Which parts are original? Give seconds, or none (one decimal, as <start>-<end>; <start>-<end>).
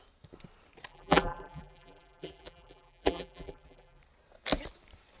0.0-0.9; 4.0-5.2